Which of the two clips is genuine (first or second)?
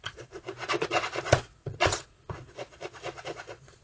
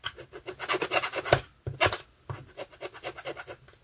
second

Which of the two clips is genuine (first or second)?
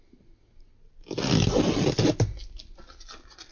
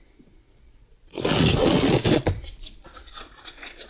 first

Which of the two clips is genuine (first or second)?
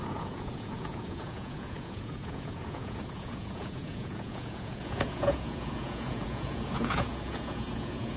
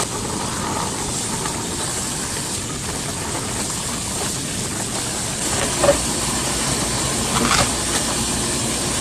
second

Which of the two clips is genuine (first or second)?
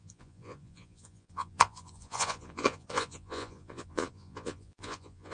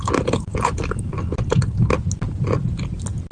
second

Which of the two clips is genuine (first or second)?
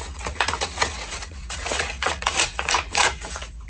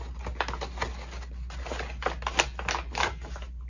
second